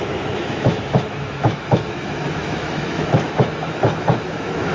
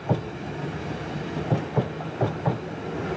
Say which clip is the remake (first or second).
first